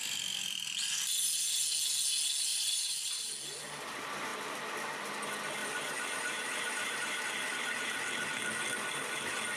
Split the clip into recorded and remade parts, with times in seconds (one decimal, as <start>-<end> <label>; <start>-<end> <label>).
0.0-2.5 recorded; 2.5-3.3 remade; 3.3-5.6 recorded; 5.6-7.2 remade; 7.2-9.6 recorded